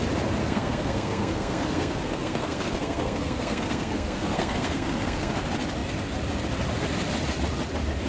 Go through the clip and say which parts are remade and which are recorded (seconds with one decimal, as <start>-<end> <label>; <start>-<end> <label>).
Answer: 0.0-0.4 recorded; 0.4-5.3 remade; 5.3-8.1 recorded